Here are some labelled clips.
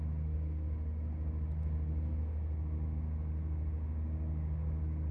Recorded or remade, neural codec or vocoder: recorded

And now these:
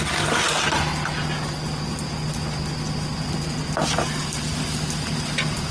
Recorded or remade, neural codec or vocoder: recorded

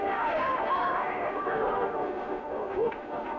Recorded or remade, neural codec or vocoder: remade, autoencoder, DAC-VAE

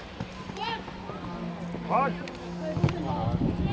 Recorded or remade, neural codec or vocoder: recorded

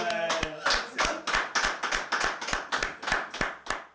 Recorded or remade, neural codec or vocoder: recorded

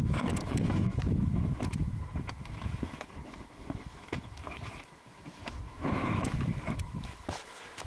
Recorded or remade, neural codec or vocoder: remade, autoencoder, DAC-VAE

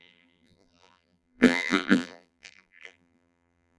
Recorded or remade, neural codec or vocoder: remade, vocoder, BigVGAN v2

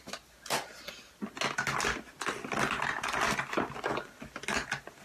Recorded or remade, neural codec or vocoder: recorded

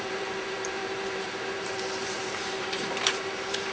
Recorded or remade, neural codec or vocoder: remade, vocoder, BigVGAN v2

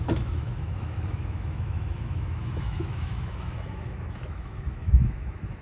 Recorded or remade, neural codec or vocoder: remade, autoencoder, DAC-VAE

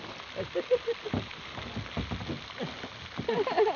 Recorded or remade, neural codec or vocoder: recorded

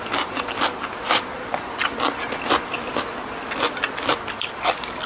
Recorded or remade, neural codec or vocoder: recorded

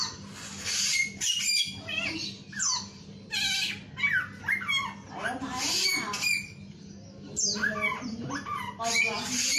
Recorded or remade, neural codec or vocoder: recorded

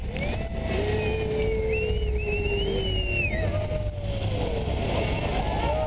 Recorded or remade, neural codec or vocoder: recorded